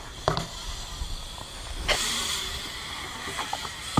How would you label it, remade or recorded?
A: recorded